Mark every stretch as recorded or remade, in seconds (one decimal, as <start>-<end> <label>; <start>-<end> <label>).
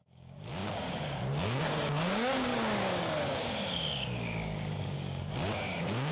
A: 0.0-6.1 remade